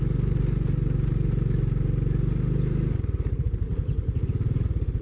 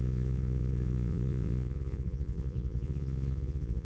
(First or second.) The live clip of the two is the first